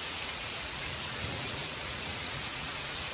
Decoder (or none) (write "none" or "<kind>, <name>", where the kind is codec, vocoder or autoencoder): vocoder, Vocos